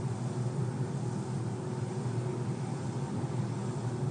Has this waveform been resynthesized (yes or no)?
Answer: no